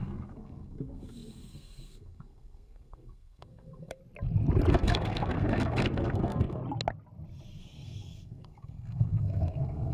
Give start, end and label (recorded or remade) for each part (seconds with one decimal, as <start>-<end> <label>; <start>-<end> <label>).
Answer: 0.0-4.0 remade; 4.0-4.7 recorded; 4.7-6.6 remade; 6.6-7.6 recorded; 7.6-9.9 remade